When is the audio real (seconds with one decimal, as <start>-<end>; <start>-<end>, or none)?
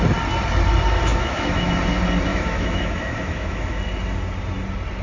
0.0-1.1; 1.7-2.3; 3.8-5.0